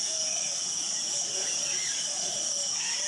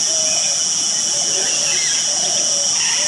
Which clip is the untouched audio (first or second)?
second